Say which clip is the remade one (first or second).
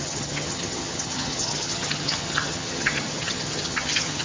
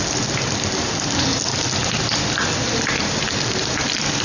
first